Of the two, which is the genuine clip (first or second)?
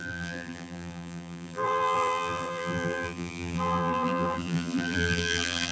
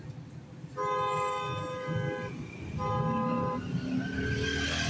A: second